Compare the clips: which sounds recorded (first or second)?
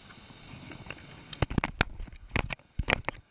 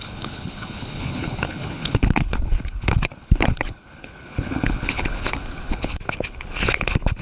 first